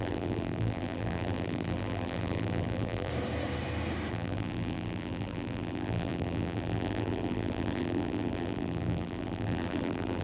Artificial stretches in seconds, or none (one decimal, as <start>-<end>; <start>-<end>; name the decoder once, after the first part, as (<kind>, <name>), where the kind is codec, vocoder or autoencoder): 0.0-3.1 (vocoder, BigVGAN v2); 4.1-10.2